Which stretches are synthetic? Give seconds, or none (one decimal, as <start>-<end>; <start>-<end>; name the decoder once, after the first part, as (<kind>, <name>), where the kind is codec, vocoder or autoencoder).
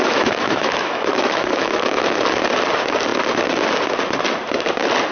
0.0-2.2 (autoencoder, DAC-VAE)